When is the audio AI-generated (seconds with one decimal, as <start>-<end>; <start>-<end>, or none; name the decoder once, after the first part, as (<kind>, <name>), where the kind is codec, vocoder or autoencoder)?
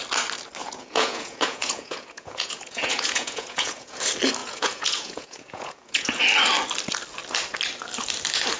0.6-4.0 (vocoder, Vocos); 4.4-6.2